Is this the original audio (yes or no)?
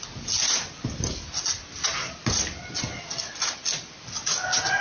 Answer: yes